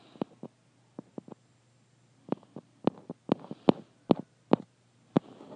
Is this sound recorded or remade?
recorded